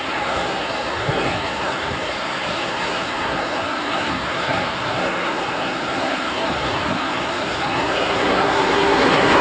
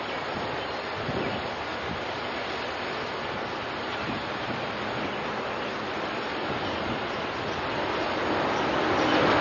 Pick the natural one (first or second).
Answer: second